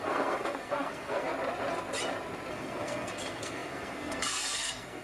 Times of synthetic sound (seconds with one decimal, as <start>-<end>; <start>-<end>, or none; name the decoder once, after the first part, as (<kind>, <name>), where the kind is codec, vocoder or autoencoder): 0.0-1.3 (codec, SNAC); 2.5-5.0